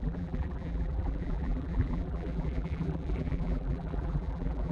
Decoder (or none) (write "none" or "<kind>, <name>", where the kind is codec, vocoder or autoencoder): vocoder, BigVGAN v2